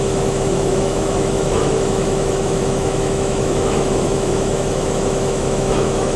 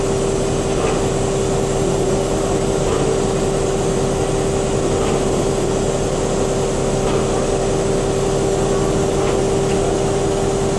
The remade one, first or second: first